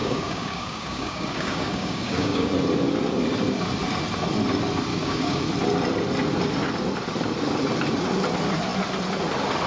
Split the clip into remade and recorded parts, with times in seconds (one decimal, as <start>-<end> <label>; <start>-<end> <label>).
0.0-2.5 remade; 2.5-4.9 recorded; 4.9-5.4 remade; 5.4-9.7 recorded